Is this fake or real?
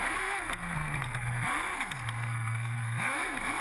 fake